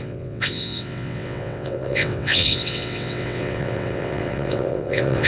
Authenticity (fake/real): fake